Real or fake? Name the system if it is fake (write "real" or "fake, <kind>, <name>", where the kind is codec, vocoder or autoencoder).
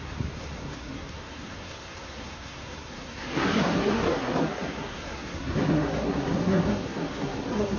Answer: fake, codec, SNAC